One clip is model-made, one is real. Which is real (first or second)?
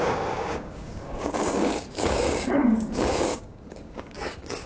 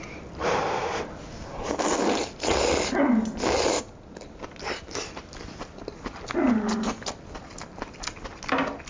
second